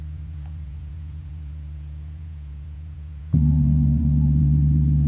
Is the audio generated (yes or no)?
yes